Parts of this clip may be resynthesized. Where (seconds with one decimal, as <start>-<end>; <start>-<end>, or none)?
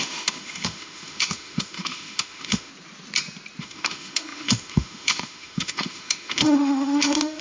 0.0-2.7; 3.6-7.4